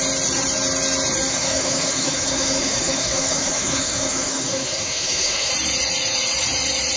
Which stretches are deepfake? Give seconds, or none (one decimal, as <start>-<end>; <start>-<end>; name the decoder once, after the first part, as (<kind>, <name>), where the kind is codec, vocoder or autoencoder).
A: 1.3-5.5 (autoencoder, DAC-VAE)